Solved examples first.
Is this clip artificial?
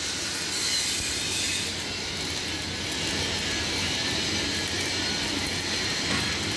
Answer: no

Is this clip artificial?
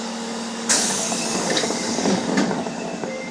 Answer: yes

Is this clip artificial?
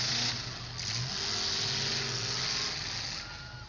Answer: no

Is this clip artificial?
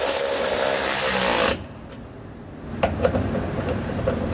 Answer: no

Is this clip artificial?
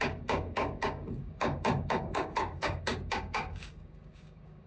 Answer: yes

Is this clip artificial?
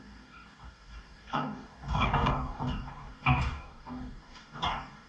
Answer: yes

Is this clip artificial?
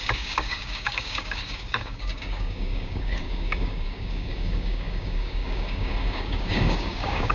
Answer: yes